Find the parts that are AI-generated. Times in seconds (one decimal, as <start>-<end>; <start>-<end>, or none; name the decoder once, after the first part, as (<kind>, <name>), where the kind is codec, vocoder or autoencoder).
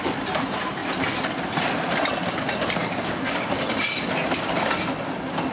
2.8-3.5 (codec, DAC)